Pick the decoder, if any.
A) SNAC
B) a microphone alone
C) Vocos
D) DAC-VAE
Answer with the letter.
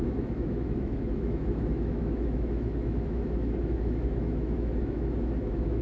D